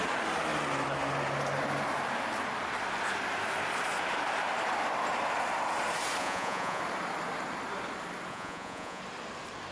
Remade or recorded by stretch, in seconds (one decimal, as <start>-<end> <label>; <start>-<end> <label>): 0.0-6.2 recorded; 6.2-6.8 remade; 6.8-8.3 recorded; 8.3-9.0 remade; 9.0-9.7 recorded